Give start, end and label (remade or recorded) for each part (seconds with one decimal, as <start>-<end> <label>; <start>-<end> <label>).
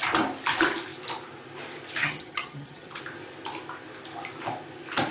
0.0-2.0 recorded; 2.0-3.0 remade; 3.0-5.1 recorded